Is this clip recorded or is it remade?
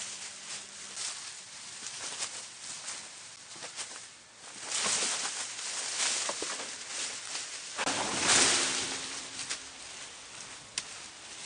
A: recorded